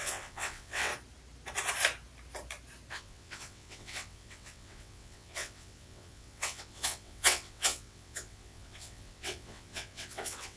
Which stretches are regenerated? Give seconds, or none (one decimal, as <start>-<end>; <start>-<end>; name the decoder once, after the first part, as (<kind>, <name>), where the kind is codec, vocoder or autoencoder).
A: 0.0-0.9 (vocoder, WaveNeXt); 2.9-10.6